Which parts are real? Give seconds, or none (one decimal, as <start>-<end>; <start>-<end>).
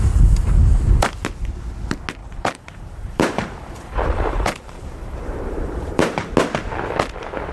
0.0-2.2; 6.3-7.5